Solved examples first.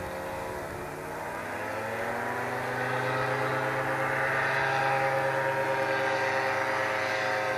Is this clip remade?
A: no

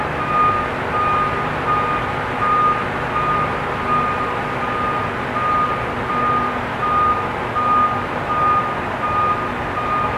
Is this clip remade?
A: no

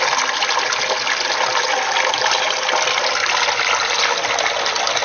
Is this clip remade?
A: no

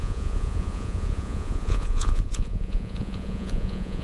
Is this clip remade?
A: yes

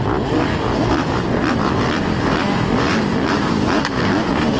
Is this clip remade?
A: no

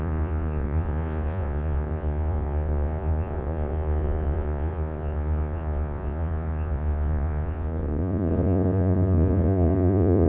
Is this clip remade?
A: yes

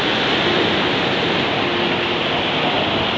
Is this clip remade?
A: no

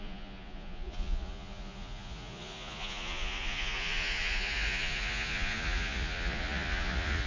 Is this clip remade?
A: yes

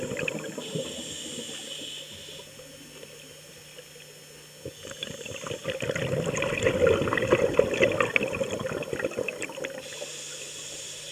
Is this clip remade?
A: no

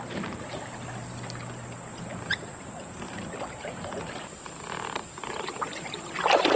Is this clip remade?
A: no